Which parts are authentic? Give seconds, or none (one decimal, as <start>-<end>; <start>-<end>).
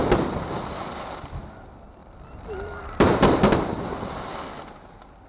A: 0.0-2.0; 3.4-5.3